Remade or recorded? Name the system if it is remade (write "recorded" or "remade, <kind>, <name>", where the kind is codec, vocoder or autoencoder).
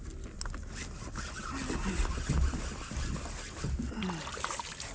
recorded